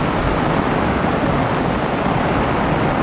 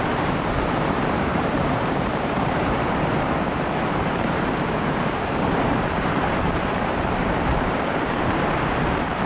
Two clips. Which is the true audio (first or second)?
first